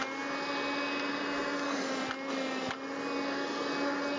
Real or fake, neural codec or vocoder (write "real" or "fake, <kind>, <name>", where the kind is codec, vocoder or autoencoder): real